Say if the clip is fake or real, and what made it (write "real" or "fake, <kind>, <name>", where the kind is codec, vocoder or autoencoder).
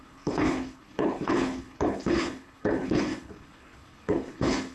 fake, codec, HILCodec